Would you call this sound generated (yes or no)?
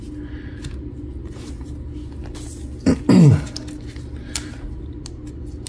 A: no